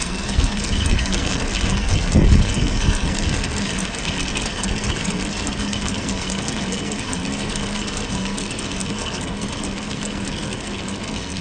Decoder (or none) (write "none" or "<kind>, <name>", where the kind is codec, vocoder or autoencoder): codec, SNAC